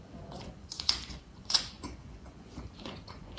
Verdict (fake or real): fake